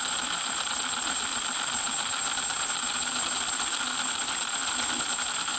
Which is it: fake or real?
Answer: real